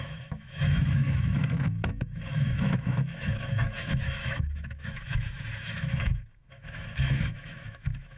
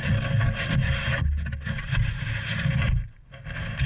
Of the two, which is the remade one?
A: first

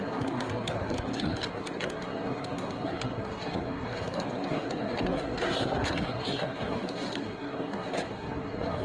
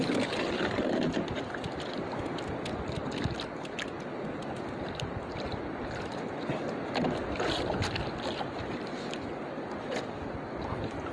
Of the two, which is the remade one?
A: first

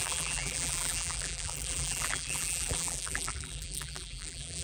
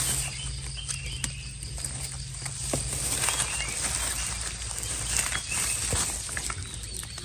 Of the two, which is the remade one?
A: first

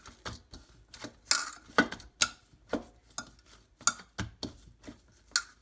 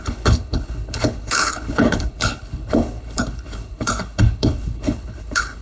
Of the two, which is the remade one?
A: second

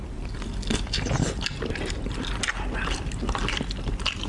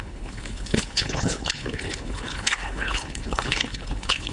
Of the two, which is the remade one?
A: second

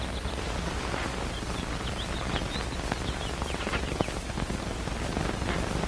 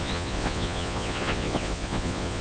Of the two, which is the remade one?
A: second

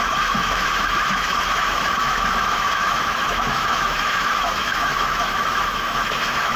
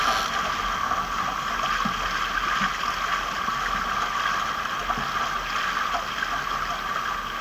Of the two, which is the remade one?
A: first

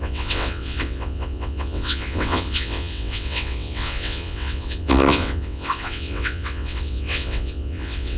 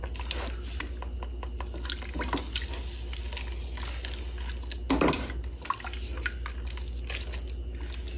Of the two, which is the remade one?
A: first